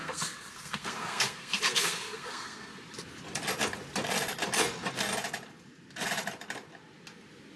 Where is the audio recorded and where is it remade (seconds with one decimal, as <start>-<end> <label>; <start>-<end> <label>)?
0.0-2.7 remade; 2.7-7.6 recorded